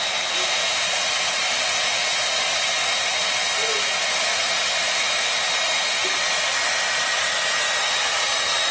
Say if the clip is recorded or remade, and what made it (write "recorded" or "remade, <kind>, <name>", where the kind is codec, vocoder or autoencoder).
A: recorded